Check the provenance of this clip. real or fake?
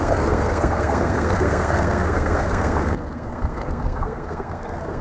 fake